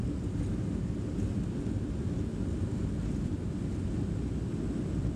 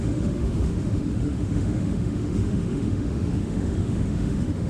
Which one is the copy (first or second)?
second